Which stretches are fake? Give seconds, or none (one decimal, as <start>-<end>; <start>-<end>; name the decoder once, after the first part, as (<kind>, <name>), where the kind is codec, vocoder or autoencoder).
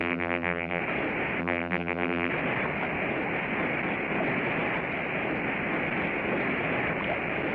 0.0-0.8 (vocoder, BigVGAN v2); 1.4-2.3